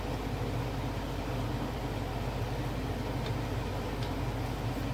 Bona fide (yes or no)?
yes